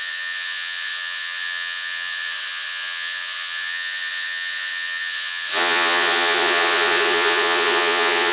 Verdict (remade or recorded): remade